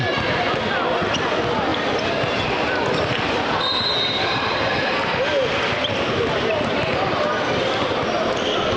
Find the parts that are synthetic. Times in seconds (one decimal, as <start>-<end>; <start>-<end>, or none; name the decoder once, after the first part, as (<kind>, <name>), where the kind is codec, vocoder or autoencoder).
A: 1.7-6.1 (vocoder, BigVGAN v2)